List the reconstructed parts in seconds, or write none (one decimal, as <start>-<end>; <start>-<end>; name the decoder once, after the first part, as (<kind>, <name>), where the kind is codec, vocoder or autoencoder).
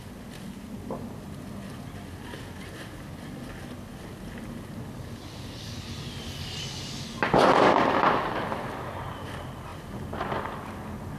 none